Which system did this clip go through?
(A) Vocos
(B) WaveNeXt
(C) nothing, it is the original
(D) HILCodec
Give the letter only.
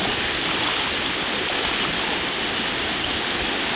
C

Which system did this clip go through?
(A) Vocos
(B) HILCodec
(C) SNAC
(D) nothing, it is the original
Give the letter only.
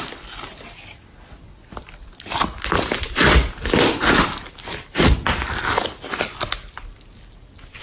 D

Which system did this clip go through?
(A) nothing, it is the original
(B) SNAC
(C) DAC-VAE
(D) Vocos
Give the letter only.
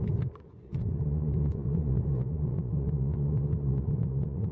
D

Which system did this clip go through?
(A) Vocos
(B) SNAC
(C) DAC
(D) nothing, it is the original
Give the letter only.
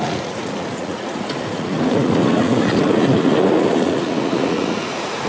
A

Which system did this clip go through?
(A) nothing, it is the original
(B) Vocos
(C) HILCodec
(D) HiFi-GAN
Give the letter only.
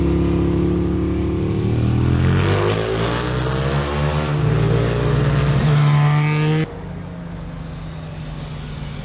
A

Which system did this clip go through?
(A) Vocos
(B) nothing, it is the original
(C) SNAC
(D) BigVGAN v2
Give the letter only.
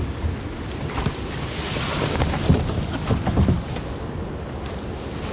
B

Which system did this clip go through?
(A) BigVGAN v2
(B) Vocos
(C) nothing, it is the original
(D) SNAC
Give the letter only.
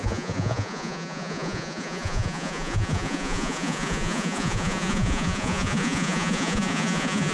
B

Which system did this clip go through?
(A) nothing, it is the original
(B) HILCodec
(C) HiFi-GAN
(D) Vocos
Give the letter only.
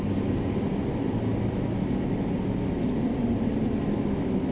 A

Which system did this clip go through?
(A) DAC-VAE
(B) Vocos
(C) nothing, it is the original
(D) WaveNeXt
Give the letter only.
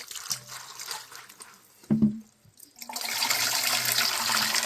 C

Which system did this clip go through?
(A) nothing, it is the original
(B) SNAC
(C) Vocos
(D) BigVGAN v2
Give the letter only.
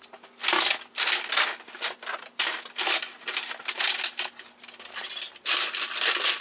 A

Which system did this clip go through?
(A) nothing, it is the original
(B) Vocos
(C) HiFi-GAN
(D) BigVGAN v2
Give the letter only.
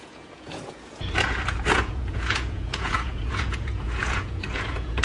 B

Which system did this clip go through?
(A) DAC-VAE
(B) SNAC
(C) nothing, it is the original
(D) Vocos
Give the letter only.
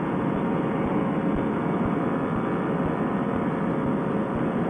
C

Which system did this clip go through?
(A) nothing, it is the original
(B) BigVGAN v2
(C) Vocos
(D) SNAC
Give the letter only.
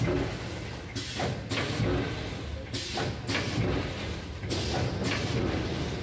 A